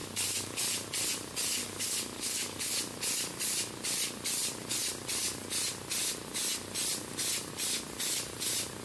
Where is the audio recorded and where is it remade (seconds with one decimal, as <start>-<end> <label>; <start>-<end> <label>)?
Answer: 0.0-0.6 remade; 0.6-1.6 recorded; 1.6-2.7 remade; 2.7-8.8 recorded